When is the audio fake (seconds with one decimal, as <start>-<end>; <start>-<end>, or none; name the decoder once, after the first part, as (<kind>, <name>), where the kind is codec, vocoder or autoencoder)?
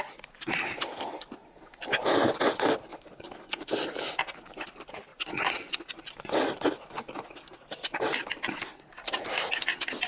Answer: 5.1-5.8 (vocoder, Vocos)